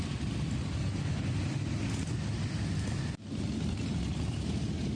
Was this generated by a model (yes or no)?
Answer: no